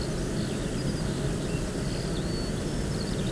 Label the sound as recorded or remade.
recorded